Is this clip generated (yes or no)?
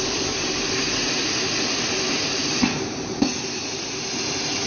yes